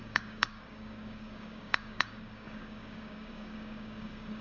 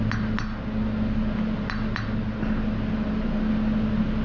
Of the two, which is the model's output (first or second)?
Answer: first